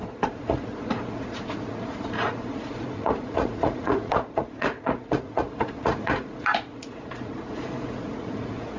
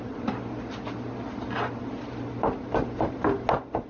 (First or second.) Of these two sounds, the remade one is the first